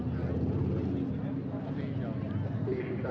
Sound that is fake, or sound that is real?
real